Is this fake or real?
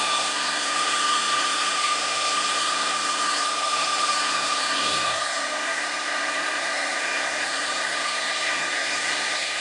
fake